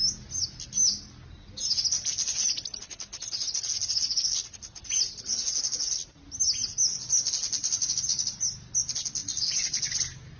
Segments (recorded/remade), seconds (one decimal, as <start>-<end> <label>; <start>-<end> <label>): 0.0-9.2 recorded; 9.2-10.0 remade; 10.0-10.4 recorded